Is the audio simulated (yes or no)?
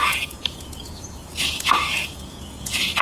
yes